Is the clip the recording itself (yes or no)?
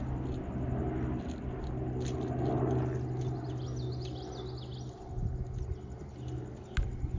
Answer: yes